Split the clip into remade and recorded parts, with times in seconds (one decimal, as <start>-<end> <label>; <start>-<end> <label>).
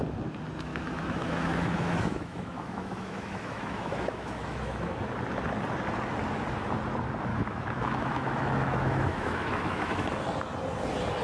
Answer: 0.0-0.7 recorded; 0.7-5.0 remade; 5.0-7.3 recorded; 7.3-10.1 remade; 10.1-11.2 recorded